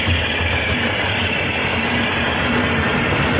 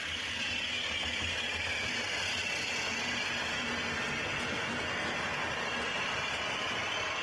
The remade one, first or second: first